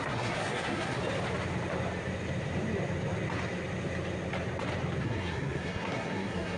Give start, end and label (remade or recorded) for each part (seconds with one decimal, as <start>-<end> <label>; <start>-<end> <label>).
0.0-1.0 remade; 1.0-5.0 recorded; 5.0-6.6 remade